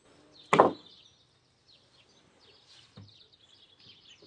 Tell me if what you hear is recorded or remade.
recorded